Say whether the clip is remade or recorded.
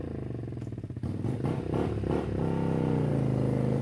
recorded